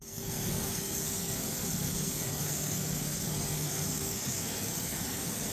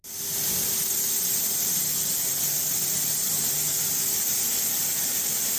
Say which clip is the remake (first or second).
first